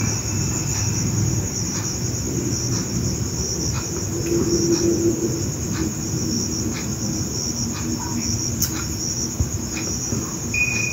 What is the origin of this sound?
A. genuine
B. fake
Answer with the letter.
A